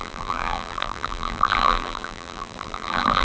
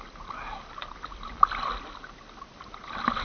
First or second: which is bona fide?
second